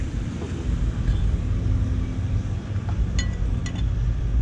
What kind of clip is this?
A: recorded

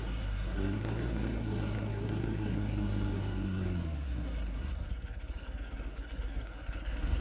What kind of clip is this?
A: remade